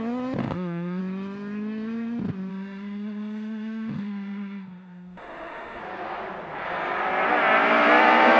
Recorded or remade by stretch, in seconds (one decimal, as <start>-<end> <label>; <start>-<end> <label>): 0.0-0.4 recorded; 0.4-1.0 remade; 1.0-2.5 recorded; 2.5-5.8 remade; 5.8-8.4 recorded